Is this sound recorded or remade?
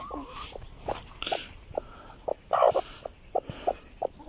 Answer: recorded